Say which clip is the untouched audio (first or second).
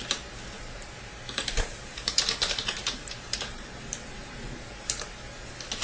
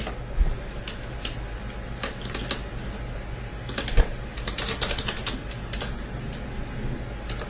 second